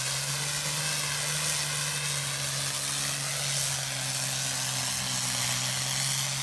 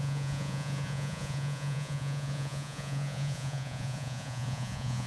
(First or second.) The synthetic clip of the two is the second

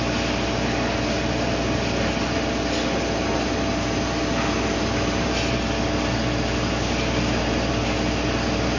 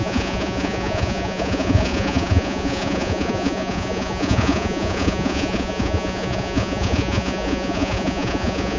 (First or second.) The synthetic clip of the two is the second